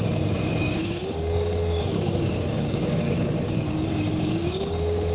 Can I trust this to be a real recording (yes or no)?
no